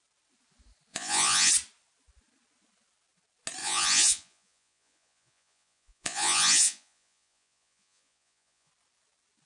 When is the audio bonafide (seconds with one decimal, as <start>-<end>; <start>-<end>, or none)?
0.0-0.9; 1.5-3.6; 8.7-9.5